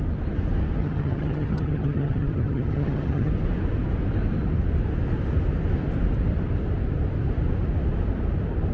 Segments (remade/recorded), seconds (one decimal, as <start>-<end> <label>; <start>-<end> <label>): 0.0-0.8 recorded; 0.8-3.3 remade; 3.3-8.7 recorded